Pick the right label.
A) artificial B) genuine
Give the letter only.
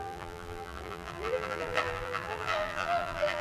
A